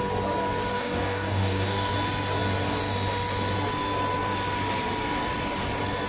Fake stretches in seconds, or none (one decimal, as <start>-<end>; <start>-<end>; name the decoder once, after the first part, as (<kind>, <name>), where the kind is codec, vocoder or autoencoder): 0.7-1.9 (codec, DAC)